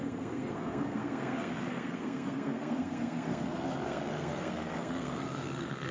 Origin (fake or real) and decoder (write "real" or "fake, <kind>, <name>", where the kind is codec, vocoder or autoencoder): fake, codec, SNAC